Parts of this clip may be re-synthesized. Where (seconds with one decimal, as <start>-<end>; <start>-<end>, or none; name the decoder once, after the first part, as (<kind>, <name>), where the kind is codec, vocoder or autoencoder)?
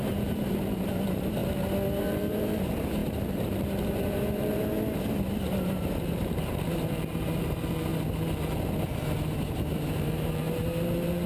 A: 0.0-1.4 (vocoder, BigVGAN v2); 2.0-7.9; 9.4-11.3